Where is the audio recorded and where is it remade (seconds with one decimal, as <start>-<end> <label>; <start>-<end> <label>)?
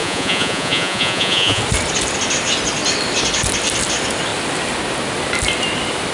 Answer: 0.0-1.6 remade; 1.6-6.1 recorded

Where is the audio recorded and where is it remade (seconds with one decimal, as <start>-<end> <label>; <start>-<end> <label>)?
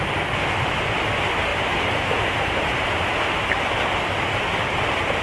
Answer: 0.0-1.5 recorded; 1.5-3.5 remade; 3.5-5.2 recorded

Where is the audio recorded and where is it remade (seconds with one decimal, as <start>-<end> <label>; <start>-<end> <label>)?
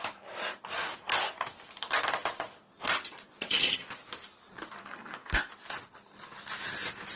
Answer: 0.0-4.8 recorded; 4.8-5.5 remade; 5.5-7.2 recorded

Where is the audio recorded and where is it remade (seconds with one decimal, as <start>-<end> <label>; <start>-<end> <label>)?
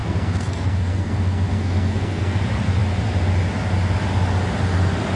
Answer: 0.0-2.4 remade; 2.4-5.2 recorded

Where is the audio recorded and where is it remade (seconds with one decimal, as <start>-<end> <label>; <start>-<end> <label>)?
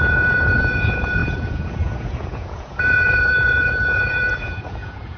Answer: 0.0-5.2 remade